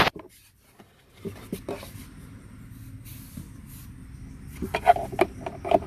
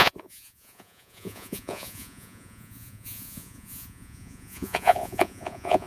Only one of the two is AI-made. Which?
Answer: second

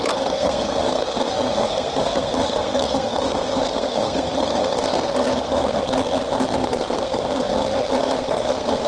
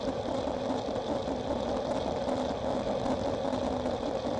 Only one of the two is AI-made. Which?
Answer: first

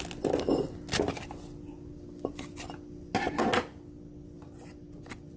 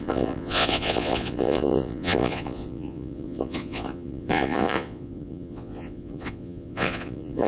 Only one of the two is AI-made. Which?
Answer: second